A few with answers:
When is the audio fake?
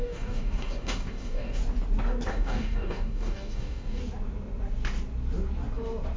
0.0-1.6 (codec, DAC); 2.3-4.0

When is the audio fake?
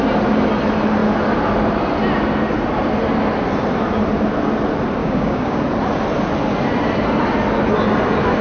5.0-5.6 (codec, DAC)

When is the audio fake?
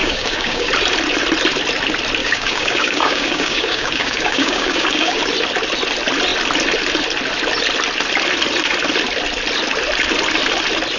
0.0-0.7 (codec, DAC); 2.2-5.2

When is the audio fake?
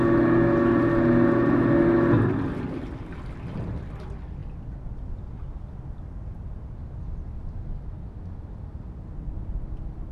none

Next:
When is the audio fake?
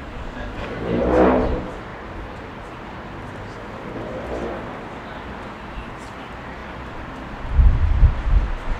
0.0-1.0 (codec, DAC)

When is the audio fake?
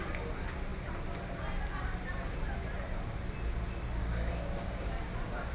4.0-4.9 (codec, DAC)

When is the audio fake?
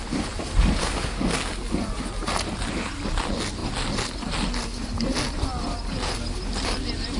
0.8-1.7 (codec, DAC)